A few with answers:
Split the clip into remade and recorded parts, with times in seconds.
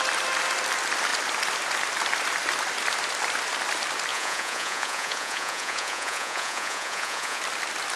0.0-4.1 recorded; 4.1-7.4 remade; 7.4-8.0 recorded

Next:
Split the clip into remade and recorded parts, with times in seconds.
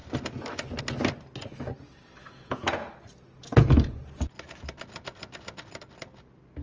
0.0-2.2 recorded; 2.2-2.9 remade; 2.9-3.4 recorded; 3.4-4.0 remade; 4.0-6.6 recorded